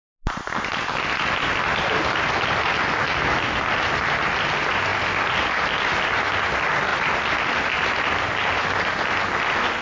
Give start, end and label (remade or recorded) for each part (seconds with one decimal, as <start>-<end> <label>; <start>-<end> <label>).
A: 0.0-9.8 recorded